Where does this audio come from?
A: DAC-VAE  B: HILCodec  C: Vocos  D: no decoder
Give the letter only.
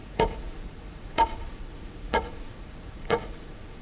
C